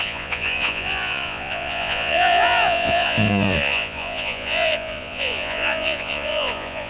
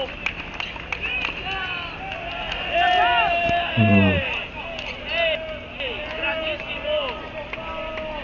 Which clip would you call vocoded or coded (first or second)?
first